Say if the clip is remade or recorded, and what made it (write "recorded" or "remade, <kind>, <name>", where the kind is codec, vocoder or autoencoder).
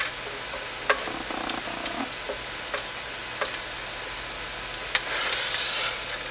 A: recorded